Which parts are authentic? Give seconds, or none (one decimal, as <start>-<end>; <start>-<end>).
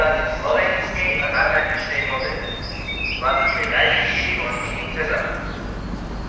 0.0-6.3